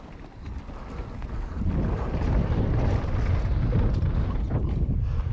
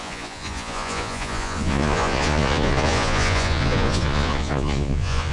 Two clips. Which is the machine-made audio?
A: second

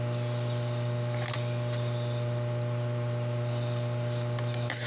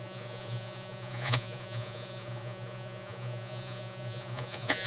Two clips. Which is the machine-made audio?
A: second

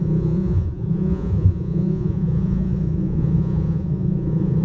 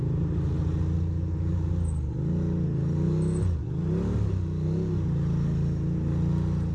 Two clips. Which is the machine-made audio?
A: first